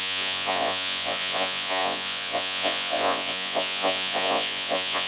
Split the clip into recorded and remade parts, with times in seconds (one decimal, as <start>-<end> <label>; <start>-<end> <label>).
0.0-5.1 remade